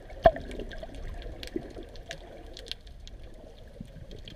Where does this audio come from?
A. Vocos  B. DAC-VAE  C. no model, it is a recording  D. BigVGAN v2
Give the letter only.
C